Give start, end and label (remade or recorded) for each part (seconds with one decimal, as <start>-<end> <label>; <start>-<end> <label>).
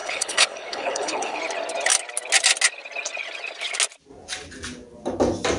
0.0-1.4 remade; 1.4-5.6 recorded